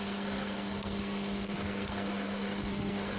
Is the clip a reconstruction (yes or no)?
yes